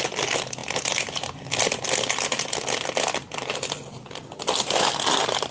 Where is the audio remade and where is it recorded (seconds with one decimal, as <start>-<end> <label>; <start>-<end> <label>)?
0.0-5.5 recorded